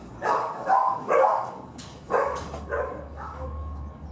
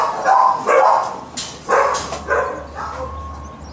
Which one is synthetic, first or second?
first